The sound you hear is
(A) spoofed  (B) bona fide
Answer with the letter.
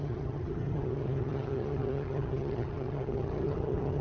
A